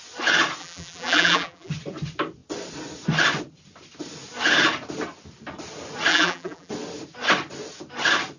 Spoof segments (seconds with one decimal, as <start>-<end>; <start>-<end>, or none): 0.6-1.7; 6.1-6.7